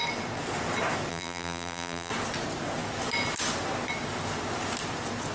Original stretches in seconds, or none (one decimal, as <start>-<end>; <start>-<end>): 0.0-1.1; 2.1-5.3